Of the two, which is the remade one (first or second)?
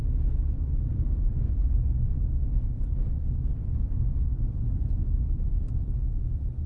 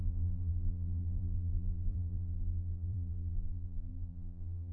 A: second